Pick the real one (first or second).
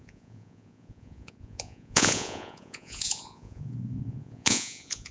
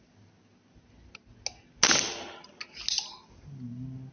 second